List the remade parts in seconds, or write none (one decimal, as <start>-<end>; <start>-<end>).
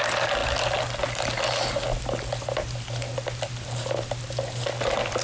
none